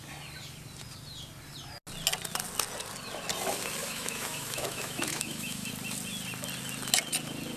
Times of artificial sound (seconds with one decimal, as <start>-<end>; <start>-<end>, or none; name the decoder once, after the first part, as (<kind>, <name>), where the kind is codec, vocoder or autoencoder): 3.8-5.7 (autoencoder, DAC-VAE)